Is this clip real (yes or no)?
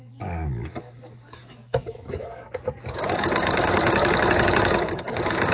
no